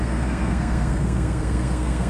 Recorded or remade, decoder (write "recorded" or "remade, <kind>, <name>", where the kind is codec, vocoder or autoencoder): remade, codec, SNAC